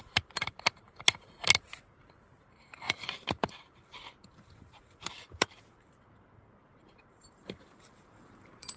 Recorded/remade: remade